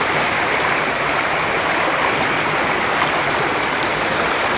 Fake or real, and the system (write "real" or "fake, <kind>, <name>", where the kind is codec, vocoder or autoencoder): real